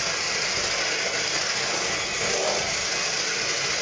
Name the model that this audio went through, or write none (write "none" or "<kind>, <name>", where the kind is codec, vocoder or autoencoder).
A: none